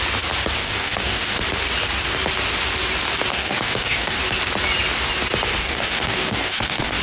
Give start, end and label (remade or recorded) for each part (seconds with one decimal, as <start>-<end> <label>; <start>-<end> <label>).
0.0-0.6 recorded; 0.6-1.4 remade; 1.4-3.3 recorded; 3.3-4.2 remade; 4.2-5.6 recorded; 5.6-7.0 remade